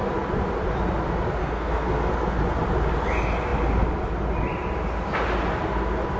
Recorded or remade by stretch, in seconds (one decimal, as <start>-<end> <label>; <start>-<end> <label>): 0.0-1.4 recorded; 1.4-2.1 remade; 2.1-6.2 recorded